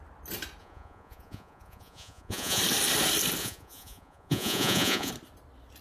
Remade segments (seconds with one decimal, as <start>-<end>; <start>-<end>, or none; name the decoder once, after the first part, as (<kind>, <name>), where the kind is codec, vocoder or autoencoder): 0.6-2.6 (vocoder, Vocos); 3.4-5.1